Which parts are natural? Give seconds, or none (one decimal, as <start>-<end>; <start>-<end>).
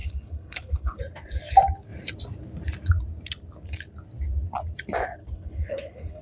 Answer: 1.0-5.2